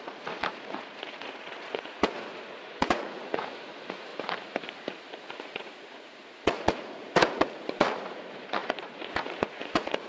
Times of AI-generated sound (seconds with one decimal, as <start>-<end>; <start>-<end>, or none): 0.0-4.1; 5.1-10.1